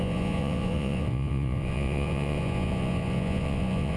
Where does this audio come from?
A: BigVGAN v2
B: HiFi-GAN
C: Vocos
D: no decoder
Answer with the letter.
C